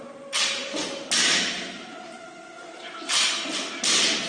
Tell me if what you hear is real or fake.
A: real